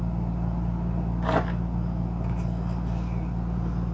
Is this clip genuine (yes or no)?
yes